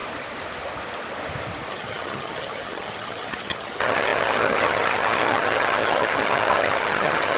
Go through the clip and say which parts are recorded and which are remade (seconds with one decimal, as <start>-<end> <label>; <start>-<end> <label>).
0.0-1.7 recorded; 1.7-7.4 remade